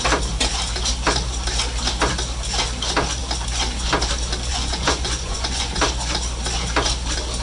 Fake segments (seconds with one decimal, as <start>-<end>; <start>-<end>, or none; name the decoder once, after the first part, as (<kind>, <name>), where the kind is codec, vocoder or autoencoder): 4.5-5.8 (vocoder, Vocos)